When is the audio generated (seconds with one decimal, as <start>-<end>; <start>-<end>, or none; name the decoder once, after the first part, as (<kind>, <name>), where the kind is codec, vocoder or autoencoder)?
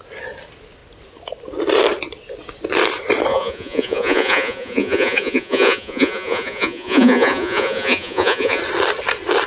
3.3-8.6 (vocoder, Vocos)